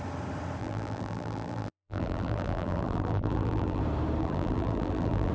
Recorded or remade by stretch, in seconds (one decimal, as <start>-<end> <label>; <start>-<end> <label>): 0.0-0.6 recorded; 0.6-3.8 remade; 3.8-4.2 recorded; 4.2-5.3 remade